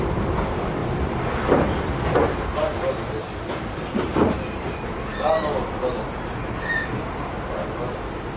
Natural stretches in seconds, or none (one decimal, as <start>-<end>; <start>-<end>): 0.0-0.8; 1.9-2.7; 4.8-8.4